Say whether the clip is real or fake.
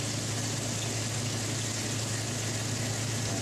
real